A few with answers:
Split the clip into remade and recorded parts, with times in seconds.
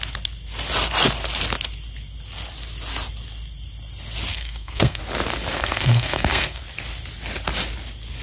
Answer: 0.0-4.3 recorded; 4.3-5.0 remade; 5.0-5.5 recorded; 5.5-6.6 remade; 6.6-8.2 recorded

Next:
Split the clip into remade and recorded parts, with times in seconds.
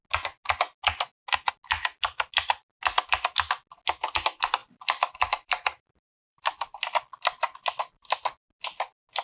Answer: 0.0-4.6 recorded; 4.6-8.2 remade; 8.2-9.2 recorded